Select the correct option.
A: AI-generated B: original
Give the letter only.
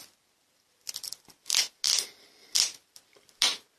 B